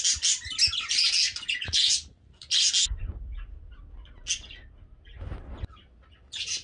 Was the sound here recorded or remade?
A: recorded